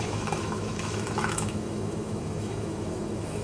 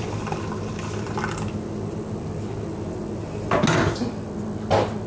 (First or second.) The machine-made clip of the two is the first